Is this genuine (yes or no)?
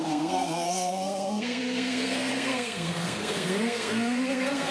no